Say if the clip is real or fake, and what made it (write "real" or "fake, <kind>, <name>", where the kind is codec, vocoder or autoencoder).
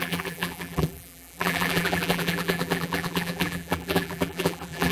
fake, vocoder, BigVGAN v2